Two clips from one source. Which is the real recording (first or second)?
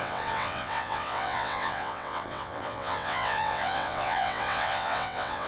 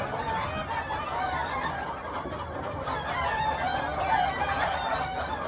second